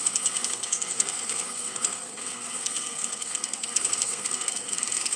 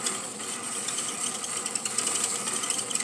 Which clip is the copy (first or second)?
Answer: first